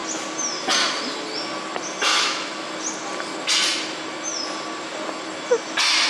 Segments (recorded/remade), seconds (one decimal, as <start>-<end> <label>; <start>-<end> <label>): 0.0-2.1 recorded; 2.1-2.7 remade; 2.7-6.1 recorded